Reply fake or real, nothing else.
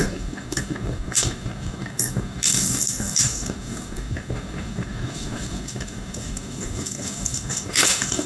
fake